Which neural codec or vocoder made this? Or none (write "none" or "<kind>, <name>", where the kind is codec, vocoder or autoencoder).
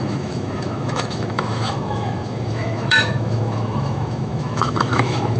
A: autoencoder, DAC-VAE